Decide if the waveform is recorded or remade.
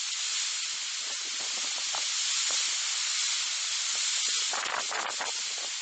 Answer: recorded